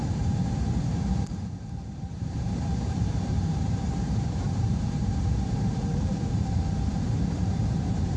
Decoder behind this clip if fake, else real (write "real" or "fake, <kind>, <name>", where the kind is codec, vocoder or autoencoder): fake, vocoder, BigVGAN v2